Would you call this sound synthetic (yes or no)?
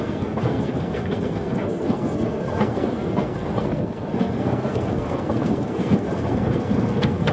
yes